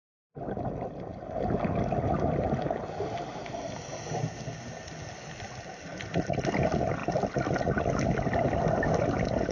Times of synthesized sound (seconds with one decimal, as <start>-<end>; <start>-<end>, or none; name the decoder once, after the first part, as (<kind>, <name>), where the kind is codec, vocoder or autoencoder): none